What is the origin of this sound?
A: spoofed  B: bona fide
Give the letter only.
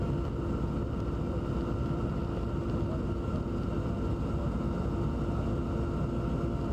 B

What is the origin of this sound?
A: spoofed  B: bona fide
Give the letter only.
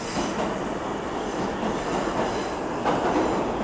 B